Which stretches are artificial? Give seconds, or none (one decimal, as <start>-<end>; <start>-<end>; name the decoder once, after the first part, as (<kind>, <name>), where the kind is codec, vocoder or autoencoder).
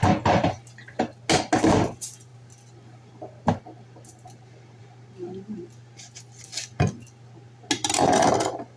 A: none